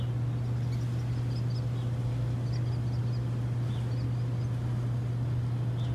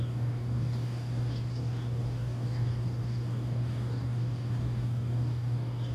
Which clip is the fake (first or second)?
second